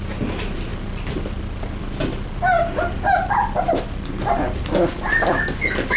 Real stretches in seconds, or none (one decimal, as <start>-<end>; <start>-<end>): 0.0-2.5; 5.4-6.0